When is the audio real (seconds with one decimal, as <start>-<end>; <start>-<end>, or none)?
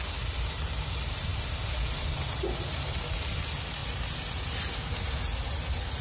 0.0-6.0